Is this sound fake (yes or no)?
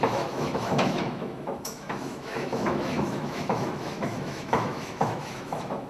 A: yes